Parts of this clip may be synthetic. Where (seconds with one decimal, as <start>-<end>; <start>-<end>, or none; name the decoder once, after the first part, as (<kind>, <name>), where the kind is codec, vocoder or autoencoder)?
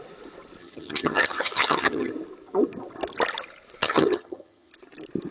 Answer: 0.6-2.1 (vocoder, HiFi-GAN); 3.8-4.7